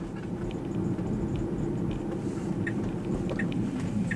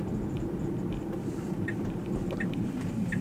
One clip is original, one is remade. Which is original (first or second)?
first